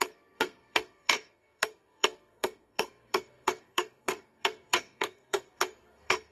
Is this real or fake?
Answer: fake